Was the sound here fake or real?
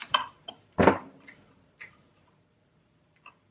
fake